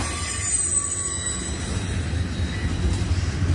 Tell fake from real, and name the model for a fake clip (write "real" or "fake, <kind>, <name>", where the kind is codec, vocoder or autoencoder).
real